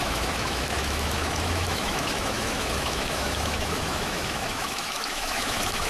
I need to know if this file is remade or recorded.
remade